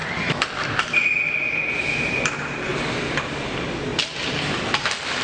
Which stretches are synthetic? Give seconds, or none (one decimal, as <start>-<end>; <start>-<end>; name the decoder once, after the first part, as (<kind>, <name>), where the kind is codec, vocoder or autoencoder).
0.0-1.6 (vocoder, BigVGAN v2); 3.9-4.8